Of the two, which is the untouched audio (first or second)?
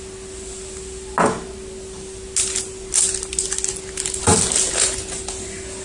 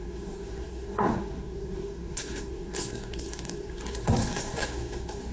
first